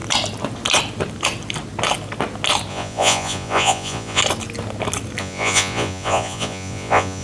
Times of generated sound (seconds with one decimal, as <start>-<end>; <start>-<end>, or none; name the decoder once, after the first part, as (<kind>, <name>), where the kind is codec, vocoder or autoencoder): 2.7-4.2 (vocoder, Vocos); 5.2-7.2